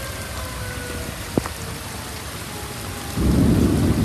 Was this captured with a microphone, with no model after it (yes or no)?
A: yes